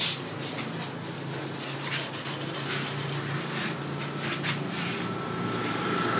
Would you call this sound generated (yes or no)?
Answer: no